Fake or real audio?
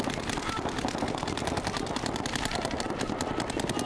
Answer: real